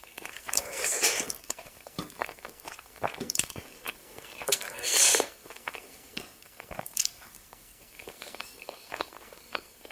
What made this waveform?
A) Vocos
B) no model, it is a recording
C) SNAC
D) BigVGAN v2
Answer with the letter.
C